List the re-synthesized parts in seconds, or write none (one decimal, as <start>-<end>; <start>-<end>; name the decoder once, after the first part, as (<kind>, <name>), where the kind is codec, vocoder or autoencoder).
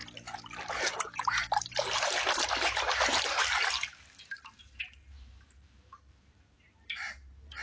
0.0-7.6 (vocoder, BigVGAN v2)